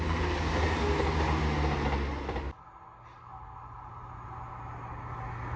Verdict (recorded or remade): recorded